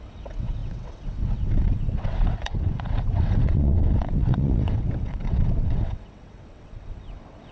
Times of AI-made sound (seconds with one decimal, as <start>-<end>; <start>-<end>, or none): 0.0-7.5